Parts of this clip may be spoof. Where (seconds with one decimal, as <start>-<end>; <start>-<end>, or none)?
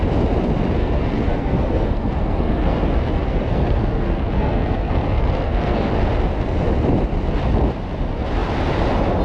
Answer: 0.8-5.9